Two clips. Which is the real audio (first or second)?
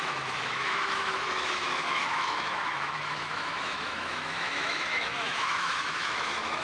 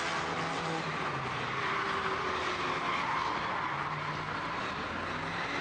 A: second